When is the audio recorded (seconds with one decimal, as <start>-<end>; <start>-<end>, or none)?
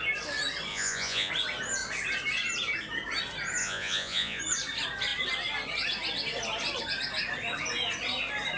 0.0-0.7; 1.3-3.6; 4.4-8.6